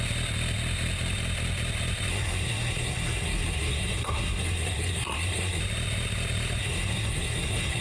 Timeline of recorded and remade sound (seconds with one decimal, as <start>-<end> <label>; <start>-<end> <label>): 0.0-2.1 recorded; 2.1-5.6 remade; 5.6-6.6 recorded; 6.6-7.8 remade